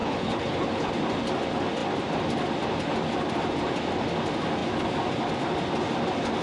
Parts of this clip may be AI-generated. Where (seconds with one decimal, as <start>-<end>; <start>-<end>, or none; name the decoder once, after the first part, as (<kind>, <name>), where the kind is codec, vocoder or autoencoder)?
0.0-0.9 (codec, HILCodec)